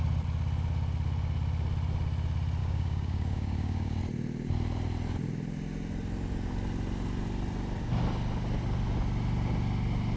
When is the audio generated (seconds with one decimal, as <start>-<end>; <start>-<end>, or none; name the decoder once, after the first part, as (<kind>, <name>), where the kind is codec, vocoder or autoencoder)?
2.6-4.0 (codec, DAC)